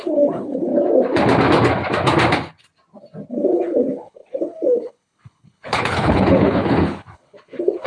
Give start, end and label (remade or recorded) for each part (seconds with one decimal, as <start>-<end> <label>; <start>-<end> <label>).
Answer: 0.0-0.7 remade; 0.7-3.3 recorded; 3.3-7.9 remade